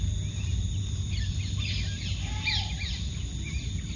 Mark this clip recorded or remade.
recorded